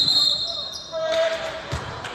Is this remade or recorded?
remade